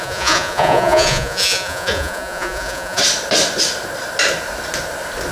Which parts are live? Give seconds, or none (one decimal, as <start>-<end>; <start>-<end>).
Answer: 3.0-5.3